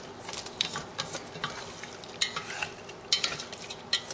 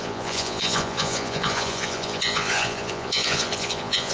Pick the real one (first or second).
first